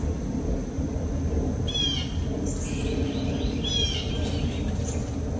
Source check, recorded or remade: recorded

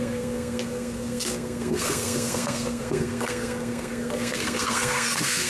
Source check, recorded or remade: remade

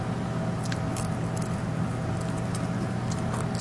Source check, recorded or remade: recorded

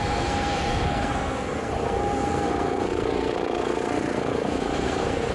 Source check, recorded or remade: remade